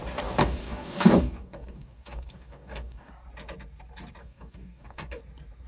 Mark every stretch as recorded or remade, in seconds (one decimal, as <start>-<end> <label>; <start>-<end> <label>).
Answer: 0.0-0.4 recorded; 0.4-3.1 remade; 3.1-4.2 recorded; 4.2-5.2 remade; 5.2-5.7 recorded